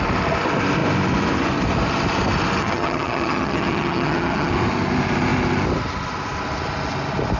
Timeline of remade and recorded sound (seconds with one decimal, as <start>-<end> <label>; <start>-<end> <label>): 0.0-2.6 recorded; 2.6-4.5 remade; 4.5-7.4 recorded